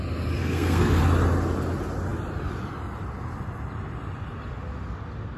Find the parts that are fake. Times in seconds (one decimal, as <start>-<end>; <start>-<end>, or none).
0.4-1.0